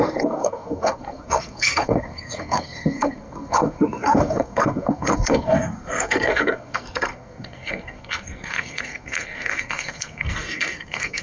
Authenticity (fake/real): fake